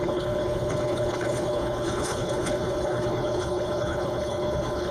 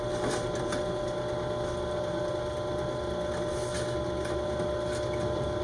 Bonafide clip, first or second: second